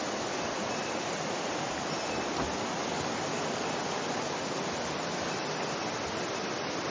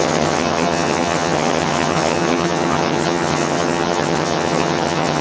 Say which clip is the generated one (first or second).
second